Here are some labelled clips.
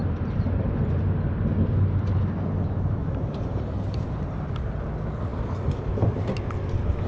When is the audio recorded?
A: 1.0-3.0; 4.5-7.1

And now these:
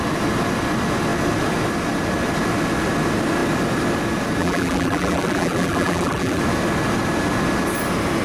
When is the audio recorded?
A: 0.0-4.4; 6.4-8.2

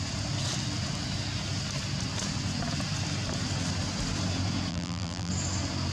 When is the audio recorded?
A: 0.0-4.7; 5.3-5.9

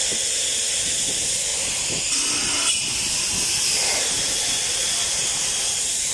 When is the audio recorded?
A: 0.0-0.6; 1.5-2.7; 5.0-6.1

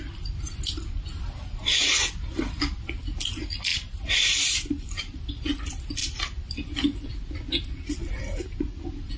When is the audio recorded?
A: 0.0-9.2

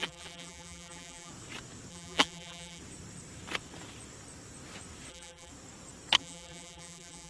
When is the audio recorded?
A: 1.3-1.9; 2.8-5.1; 5.5-6.2

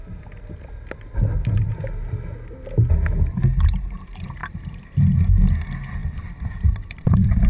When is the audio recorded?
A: 0.0-4.4; 5.2-6.0

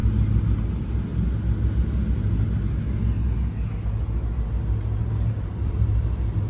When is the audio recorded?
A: 0.0-0.7; 1.1-5.0